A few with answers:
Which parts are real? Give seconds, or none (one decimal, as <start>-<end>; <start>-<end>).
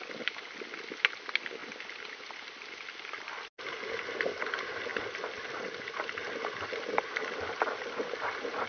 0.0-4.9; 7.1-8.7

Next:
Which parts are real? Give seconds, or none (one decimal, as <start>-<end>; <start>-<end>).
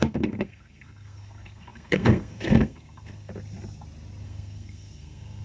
3.3-4.2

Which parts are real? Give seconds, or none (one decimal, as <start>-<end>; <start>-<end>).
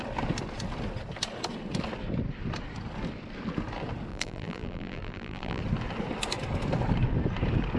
0.0-4.1; 5.6-7.8